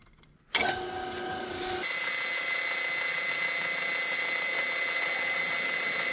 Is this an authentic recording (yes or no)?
yes